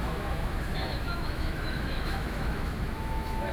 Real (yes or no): no